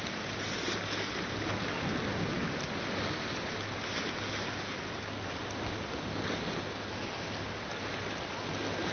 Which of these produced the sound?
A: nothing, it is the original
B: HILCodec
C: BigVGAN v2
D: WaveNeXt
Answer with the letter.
A